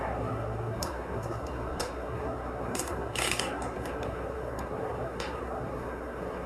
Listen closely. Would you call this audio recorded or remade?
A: remade